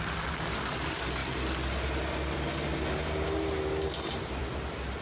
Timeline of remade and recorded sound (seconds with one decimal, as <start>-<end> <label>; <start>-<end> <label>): 0.0-5.0 recorded

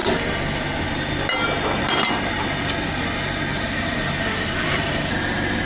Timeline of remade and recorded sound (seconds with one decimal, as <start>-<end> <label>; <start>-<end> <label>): 0.0-3.5 recorded; 3.5-5.3 remade; 5.3-5.7 recorded

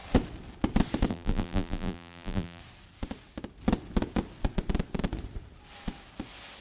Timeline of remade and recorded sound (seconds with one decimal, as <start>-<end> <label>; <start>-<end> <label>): 0.0-1.1 recorded; 1.1-2.6 remade; 2.6-6.6 recorded

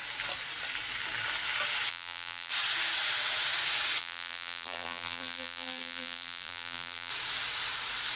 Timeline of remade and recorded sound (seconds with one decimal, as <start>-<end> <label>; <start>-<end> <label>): 0.0-1.9 recorded; 1.9-2.5 remade; 2.5-4.0 recorded; 4.0-7.1 remade; 7.1-8.2 recorded

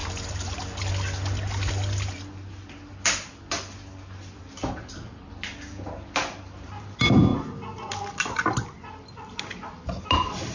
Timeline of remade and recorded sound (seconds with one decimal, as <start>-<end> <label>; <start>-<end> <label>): 0.0-10.5 recorded

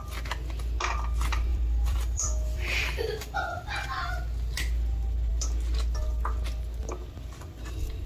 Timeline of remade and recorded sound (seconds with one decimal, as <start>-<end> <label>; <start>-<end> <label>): 0.0-1.5 recorded; 1.5-4.1 remade; 4.1-8.1 recorded

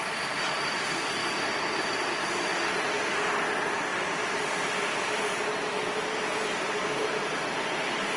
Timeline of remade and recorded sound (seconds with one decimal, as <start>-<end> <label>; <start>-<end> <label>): 0.0-1.2 remade; 1.2-1.8 recorded; 1.8-2.5 remade; 2.5-3.0 recorded; 3.0-3.9 remade; 3.9-4.9 recorded; 4.9-8.2 remade

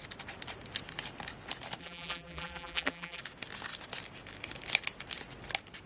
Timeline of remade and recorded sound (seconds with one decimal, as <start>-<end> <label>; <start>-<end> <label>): 0.0-1.8 recorded; 1.8-3.2 remade; 3.2-5.9 recorded